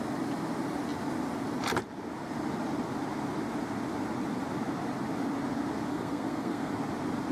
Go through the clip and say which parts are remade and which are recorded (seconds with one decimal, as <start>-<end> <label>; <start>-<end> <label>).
0.0-5.9 recorded; 5.9-6.7 remade; 6.7-7.3 recorded

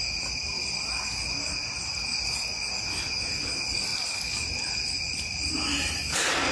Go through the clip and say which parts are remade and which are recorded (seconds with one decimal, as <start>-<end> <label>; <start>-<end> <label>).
0.0-6.5 recorded

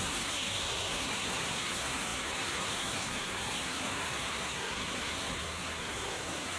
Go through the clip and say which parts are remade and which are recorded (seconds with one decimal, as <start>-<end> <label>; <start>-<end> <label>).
0.0-6.6 remade